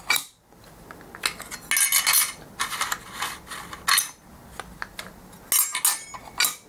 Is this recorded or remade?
recorded